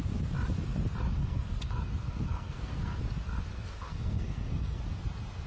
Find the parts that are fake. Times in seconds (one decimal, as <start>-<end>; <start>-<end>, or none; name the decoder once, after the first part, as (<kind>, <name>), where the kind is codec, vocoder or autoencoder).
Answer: 1.2-3.0 (codec, SNAC); 3.5-4.8